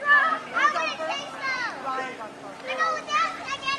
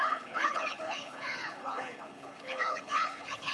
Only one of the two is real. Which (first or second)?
first